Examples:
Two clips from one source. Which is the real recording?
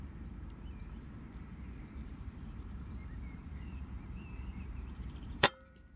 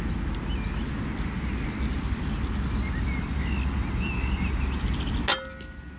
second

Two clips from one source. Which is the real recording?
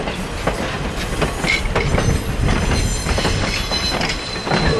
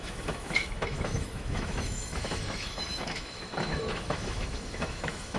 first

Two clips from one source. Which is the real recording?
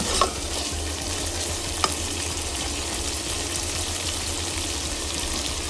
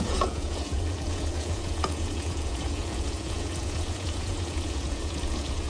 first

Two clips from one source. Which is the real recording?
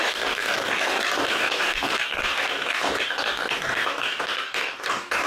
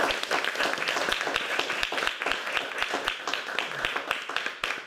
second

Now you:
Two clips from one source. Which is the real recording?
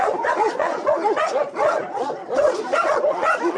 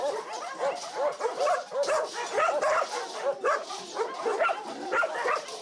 second